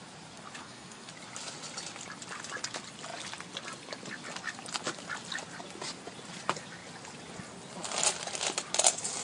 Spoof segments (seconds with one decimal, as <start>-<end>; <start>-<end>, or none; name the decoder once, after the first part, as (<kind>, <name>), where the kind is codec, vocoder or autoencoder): 0.6-1.1 (codec, SNAC)